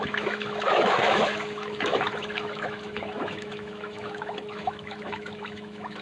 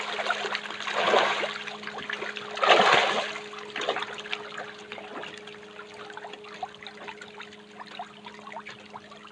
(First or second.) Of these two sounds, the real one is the second